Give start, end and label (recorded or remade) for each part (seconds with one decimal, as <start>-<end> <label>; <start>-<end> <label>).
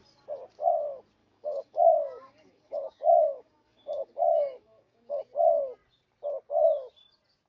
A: 0.0-1.2 recorded; 1.2-5.2 remade; 5.2-7.5 recorded